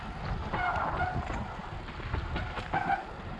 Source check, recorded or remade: recorded